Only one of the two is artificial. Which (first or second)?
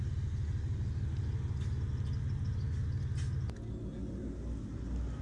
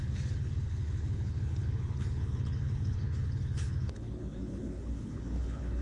second